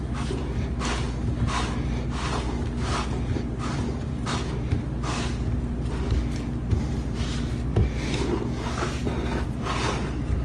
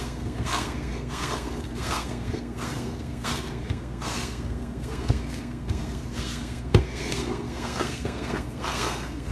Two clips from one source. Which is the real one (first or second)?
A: first